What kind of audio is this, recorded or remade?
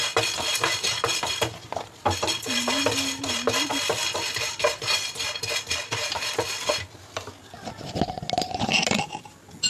recorded